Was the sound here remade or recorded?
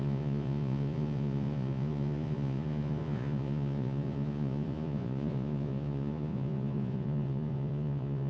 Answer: remade